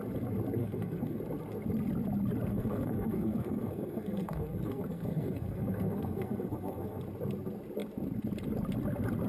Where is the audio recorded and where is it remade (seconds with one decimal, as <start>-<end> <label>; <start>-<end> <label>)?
0.0-0.6 recorded; 0.6-1.2 remade; 1.2-2.5 recorded; 2.5-7.0 remade; 7.0-9.3 recorded